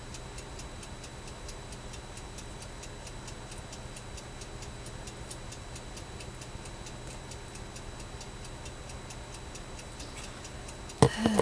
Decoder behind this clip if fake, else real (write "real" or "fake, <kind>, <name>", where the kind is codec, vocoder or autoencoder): real